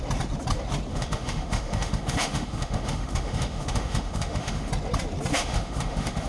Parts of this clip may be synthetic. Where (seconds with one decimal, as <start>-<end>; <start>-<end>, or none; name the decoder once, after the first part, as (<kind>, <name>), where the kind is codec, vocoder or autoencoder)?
0.9-4.7 (autoencoder, DAC-VAE); 5.3-6.3